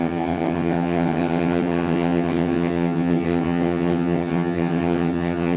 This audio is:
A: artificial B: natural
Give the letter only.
A